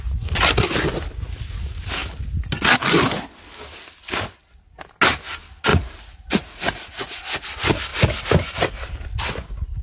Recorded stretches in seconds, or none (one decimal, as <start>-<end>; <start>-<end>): 0.0-5.7; 7.2-9.8